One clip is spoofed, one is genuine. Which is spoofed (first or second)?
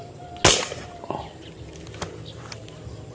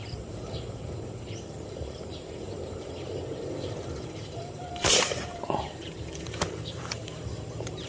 second